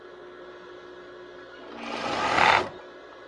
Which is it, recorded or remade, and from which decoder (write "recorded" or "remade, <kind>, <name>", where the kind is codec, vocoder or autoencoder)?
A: recorded